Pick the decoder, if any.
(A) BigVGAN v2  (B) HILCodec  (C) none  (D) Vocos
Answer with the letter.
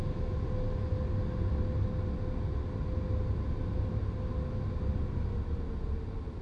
C